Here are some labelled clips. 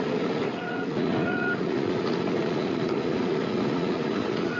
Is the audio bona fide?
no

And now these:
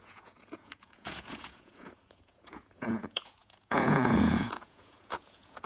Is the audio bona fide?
no